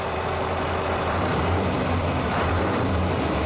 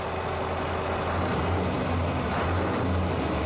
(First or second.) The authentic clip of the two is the second